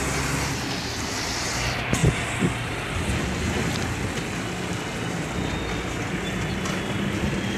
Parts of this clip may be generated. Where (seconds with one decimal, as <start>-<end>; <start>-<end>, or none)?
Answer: none